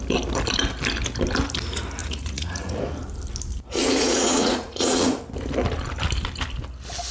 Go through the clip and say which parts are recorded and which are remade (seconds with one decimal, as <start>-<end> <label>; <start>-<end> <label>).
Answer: 0.0-2.0 recorded; 2.0-2.8 remade; 2.8-3.8 recorded; 3.8-5.2 remade; 5.2-7.1 recorded

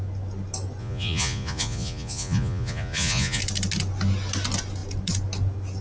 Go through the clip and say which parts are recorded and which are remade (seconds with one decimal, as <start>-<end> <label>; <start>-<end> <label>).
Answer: 0.0-0.8 recorded; 0.8-3.4 remade; 3.4-5.8 recorded

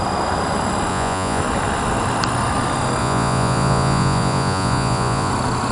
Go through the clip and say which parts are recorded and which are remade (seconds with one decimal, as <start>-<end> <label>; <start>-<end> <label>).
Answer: 0.0-0.9 recorded; 0.9-1.4 remade; 1.4-3.0 recorded; 3.0-5.3 remade; 5.3-5.7 recorded

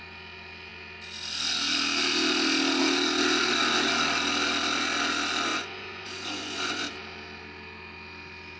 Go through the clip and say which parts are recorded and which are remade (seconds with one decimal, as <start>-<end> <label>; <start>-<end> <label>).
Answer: 0.0-5.5 recorded; 5.5-6.9 remade; 6.9-8.6 recorded

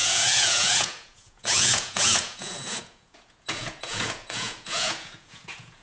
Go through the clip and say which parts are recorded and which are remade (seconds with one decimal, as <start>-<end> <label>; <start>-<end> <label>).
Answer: 0.0-5.8 remade

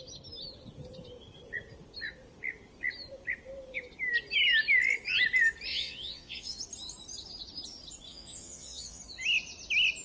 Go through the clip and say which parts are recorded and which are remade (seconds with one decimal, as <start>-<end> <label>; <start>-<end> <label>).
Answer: 0.0-5.7 recorded; 5.7-6.6 remade; 6.6-8.1 recorded; 8.1-9.0 remade; 9.0-10.0 recorded

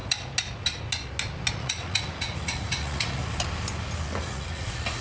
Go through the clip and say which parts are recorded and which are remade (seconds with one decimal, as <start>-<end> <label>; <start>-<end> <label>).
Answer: 0.0-1.5 recorded; 1.5-3.2 remade; 3.2-4.2 recorded; 4.2-5.0 remade

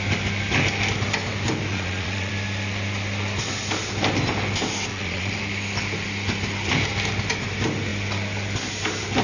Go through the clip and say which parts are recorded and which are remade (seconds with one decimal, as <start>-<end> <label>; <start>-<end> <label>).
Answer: 0.0-1.7 recorded; 1.7-2.3 remade; 2.3-4.9 recorded; 4.9-5.4 remade; 5.4-9.2 recorded